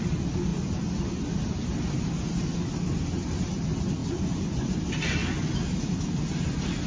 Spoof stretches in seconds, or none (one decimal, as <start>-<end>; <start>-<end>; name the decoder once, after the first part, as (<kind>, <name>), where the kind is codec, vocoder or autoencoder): 4.0-4.7 (vocoder, BigVGAN v2)